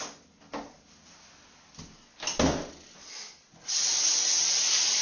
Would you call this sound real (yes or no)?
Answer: yes